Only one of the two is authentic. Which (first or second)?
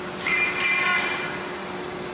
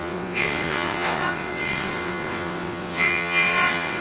first